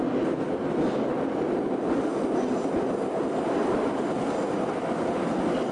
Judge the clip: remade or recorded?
recorded